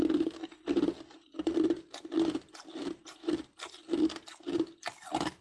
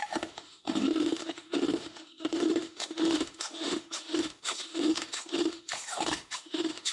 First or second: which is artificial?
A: second